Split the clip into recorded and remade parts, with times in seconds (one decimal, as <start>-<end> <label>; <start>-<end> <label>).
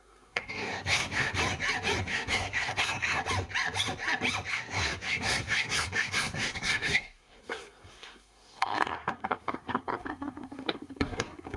0.0-1.4 remade; 1.4-2.0 recorded; 2.0-3.2 remade; 3.2-4.5 recorded; 4.5-11.6 remade